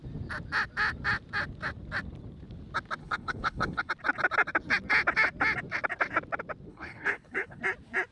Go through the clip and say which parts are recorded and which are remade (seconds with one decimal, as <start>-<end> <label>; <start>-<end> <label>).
0.0-3.0 recorded; 3.0-3.9 remade; 3.9-6.7 recorded; 6.7-7.6 remade; 7.6-8.1 recorded